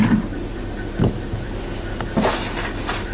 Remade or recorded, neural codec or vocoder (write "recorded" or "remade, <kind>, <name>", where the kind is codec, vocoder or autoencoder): recorded